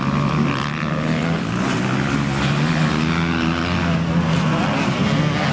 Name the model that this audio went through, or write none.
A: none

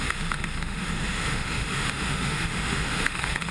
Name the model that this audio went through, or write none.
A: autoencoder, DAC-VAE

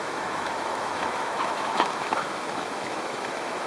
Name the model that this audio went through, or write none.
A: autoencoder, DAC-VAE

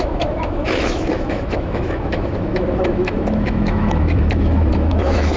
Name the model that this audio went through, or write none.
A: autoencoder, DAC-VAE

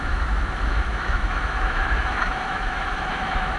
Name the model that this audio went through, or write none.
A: autoencoder, DAC-VAE